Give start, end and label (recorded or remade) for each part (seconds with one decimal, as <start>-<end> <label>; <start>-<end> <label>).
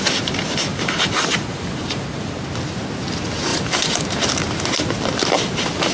0.0-0.7 recorded; 0.7-2.3 remade; 2.3-3.5 recorded; 3.5-4.0 remade; 4.0-5.9 recorded